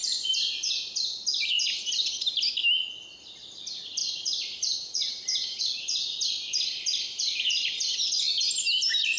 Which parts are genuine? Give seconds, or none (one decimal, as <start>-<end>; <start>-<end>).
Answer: 1.8-4.0; 5.6-9.2